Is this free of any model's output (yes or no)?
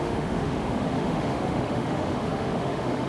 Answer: no